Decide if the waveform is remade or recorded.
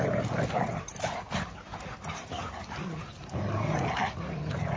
recorded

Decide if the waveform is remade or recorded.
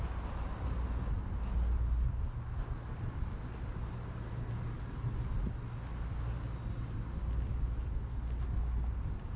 recorded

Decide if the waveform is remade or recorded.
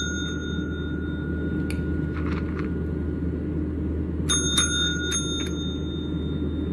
recorded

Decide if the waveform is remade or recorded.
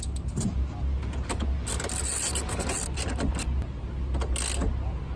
recorded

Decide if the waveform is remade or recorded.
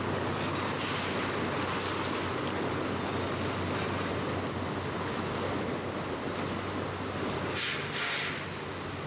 recorded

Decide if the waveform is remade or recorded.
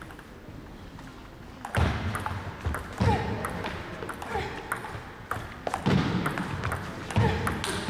recorded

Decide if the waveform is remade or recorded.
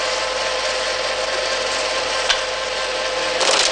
recorded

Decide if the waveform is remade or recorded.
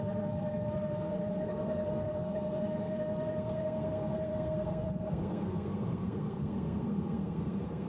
remade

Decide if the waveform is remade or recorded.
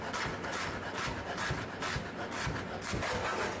recorded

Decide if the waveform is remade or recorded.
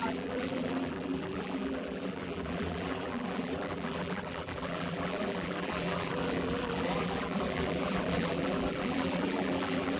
remade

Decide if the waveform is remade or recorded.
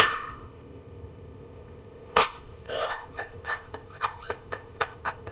remade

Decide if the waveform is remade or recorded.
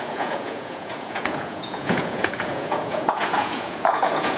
remade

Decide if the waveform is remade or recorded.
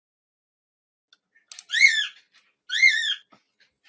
recorded